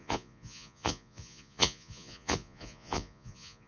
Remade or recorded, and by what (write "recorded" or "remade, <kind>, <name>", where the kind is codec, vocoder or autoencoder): remade, vocoder, Vocos